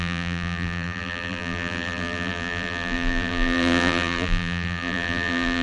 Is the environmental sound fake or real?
fake